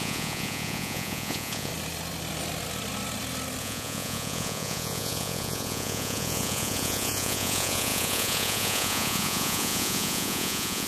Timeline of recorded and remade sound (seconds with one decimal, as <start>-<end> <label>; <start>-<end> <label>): 0.0-1.7 remade; 1.7-3.6 recorded; 3.6-10.9 remade